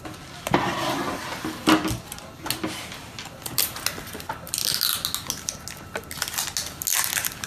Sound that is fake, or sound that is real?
real